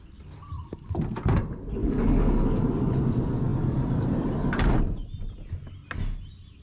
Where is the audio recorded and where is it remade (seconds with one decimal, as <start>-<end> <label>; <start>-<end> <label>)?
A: 0.0-1.8 recorded; 1.8-2.9 remade; 2.9-6.6 recorded